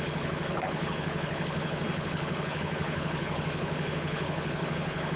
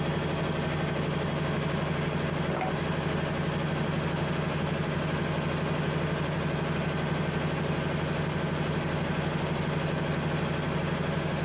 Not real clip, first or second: first